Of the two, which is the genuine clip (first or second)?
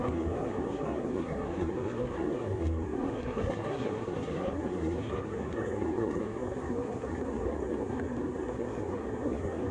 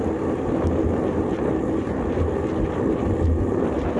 second